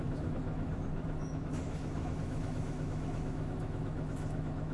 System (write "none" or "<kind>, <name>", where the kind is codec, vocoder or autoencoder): autoencoder, DAC-VAE